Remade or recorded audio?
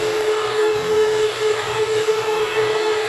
remade